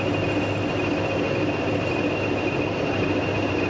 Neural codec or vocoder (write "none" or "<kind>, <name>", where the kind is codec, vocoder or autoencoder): none